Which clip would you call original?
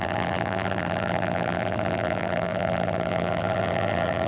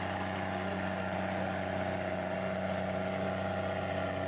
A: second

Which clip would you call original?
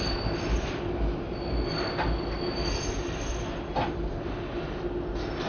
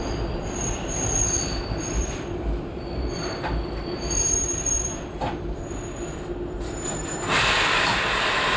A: first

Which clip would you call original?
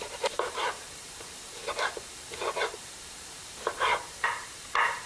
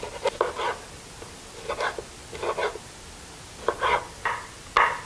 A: second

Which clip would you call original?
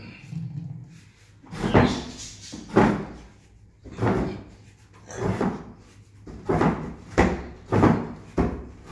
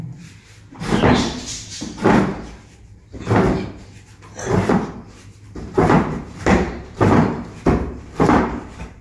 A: first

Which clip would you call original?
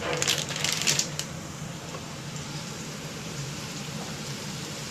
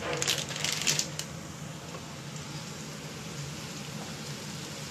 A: second